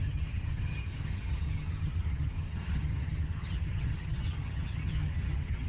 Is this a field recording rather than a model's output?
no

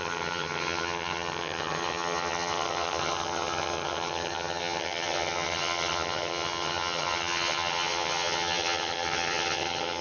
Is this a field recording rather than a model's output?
no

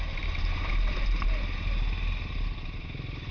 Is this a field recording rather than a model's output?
yes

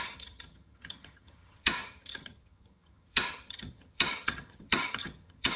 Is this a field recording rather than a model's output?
no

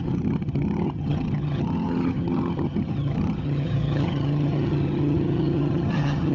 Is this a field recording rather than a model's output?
no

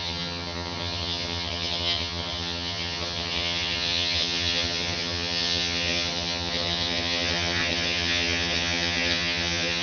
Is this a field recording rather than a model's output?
no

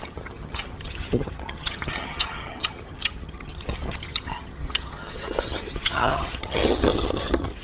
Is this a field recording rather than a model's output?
no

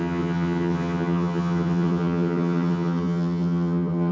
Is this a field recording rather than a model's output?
no